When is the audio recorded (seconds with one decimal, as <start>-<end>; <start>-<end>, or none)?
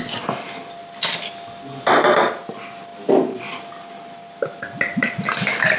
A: 0.0-5.8